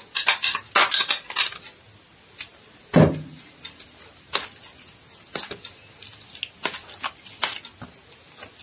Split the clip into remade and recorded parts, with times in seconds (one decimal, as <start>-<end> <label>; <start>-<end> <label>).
0.0-8.6 recorded